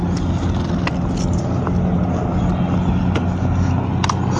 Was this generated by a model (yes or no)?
no